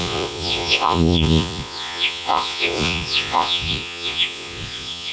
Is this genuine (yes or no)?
no